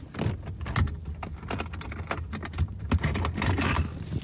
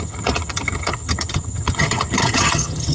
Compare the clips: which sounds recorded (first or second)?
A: first